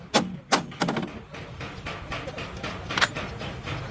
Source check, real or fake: real